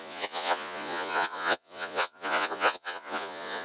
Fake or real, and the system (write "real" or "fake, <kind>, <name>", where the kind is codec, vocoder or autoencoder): fake, vocoder, Vocos